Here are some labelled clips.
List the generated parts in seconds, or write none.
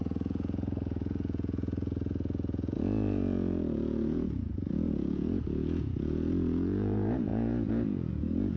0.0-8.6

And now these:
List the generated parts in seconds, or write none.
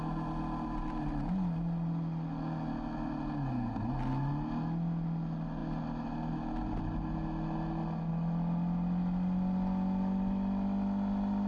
none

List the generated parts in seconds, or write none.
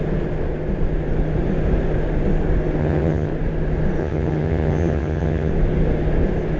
2.8-3.3; 4.0-5.5